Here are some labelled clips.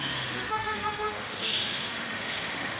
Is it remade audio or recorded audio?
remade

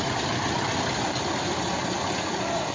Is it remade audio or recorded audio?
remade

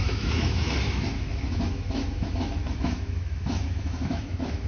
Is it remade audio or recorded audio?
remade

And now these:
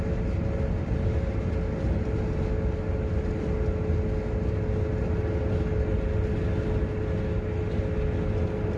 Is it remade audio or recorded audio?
recorded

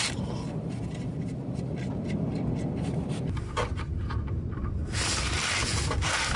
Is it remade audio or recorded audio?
recorded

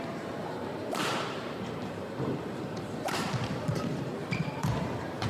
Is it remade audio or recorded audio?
remade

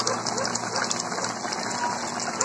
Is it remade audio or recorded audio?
recorded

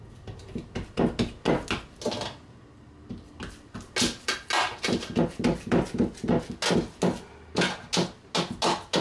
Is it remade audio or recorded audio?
recorded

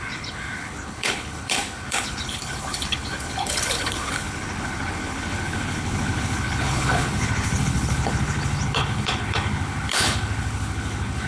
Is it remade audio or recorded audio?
remade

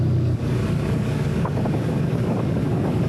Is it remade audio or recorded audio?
remade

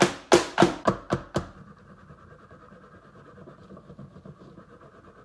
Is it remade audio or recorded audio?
recorded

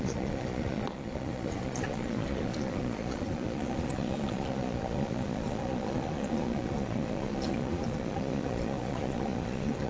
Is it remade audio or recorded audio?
remade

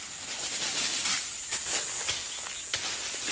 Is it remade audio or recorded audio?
recorded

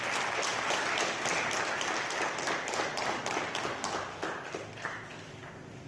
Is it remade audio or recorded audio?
recorded